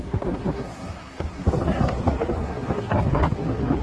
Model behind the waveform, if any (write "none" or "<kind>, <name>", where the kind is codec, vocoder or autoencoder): codec, SNAC